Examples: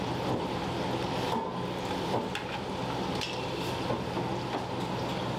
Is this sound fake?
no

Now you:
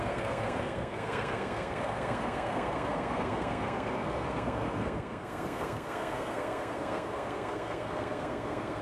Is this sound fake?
yes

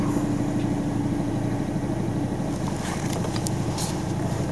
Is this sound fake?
no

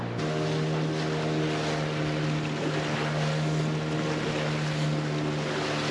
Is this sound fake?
no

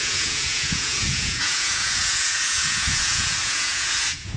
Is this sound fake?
yes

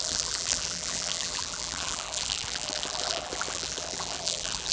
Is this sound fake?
yes